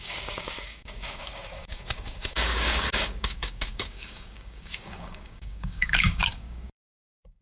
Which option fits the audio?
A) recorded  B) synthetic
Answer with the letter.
B